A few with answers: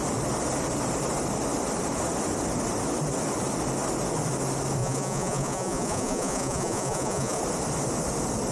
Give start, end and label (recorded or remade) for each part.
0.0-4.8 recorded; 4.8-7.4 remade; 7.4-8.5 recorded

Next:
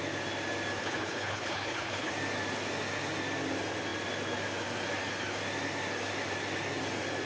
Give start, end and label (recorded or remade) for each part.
0.0-0.8 recorded; 0.8-2.1 remade; 2.1-7.3 recorded

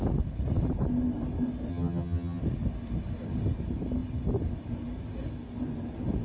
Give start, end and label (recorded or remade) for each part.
0.0-1.7 recorded; 1.7-2.4 remade; 2.4-6.2 recorded